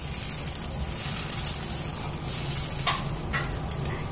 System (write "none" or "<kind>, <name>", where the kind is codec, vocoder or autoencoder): none